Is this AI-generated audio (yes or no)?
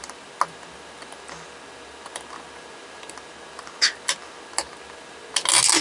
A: no